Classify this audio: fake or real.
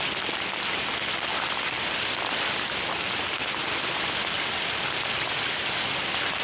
real